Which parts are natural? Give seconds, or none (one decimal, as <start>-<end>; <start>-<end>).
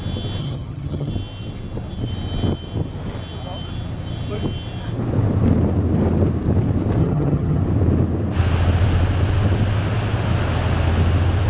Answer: 0.0-0.4; 1.1-7.0; 7.6-11.5